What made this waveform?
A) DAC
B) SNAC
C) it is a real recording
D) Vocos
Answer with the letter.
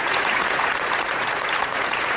D